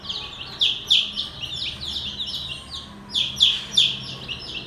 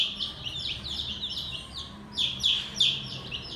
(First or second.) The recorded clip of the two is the first